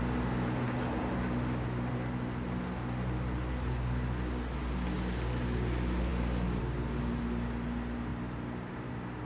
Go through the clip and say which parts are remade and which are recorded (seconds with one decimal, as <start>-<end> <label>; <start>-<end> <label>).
0.0-8.1 recorded; 8.1-8.7 remade; 8.7-9.2 recorded